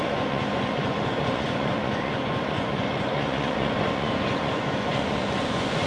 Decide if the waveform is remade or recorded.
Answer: remade